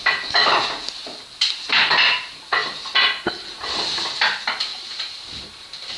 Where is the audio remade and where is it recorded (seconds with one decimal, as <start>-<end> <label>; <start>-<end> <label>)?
0.0-4.7 recorded; 4.7-6.0 remade